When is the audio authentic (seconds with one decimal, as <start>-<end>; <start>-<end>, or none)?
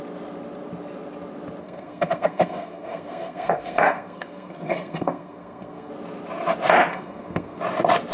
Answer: 0.0-1.6; 5.9-6.9; 7.6-8.1